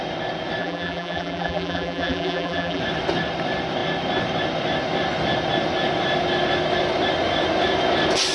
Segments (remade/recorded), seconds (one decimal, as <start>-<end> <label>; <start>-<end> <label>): 0.0-0.6 recorded; 0.6-2.8 remade; 2.8-8.3 recorded